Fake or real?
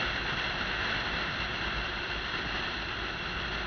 real